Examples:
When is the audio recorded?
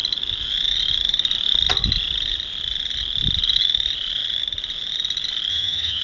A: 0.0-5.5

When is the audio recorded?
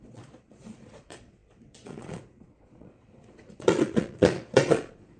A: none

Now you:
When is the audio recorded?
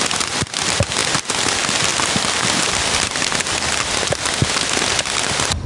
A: 0.0-5.7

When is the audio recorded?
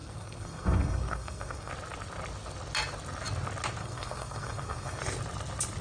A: 1.7-3.8; 5.0-5.8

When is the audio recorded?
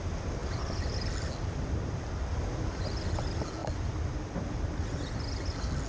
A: 0.0-5.9